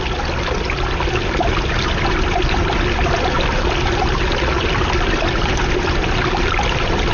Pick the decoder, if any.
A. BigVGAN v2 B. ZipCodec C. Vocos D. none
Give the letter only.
D